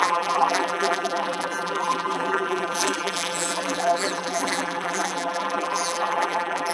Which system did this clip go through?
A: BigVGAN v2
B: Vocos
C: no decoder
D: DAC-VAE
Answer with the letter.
A